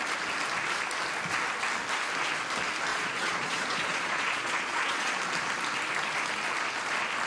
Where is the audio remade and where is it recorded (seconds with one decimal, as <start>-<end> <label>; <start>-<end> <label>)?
0.0-2.9 recorded; 2.9-5.2 remade; 5.2-7.3 recorded